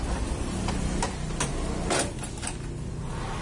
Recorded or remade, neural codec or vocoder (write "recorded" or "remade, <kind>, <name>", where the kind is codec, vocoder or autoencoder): recorded